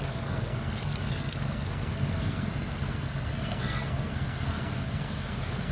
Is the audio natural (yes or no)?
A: no